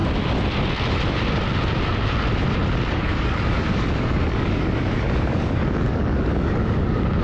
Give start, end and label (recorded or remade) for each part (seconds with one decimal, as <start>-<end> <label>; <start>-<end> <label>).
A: 0.0-2.9 recorded; 2.9-7.2 remade